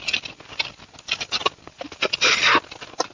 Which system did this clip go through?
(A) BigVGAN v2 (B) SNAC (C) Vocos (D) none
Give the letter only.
D